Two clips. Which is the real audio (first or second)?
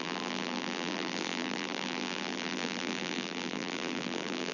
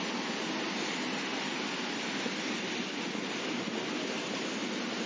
second